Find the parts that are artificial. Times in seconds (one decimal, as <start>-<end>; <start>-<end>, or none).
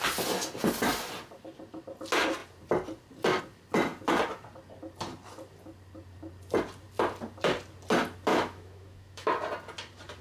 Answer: 8.3-9.3